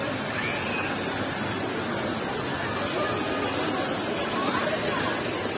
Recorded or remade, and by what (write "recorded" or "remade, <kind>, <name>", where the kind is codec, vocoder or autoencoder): recorded